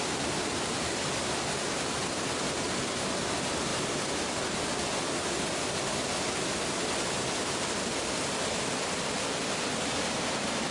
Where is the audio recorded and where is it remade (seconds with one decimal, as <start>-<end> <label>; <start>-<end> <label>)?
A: 0.0-10.7 recorded